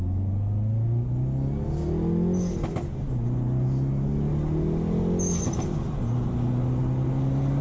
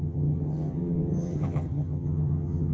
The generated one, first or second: second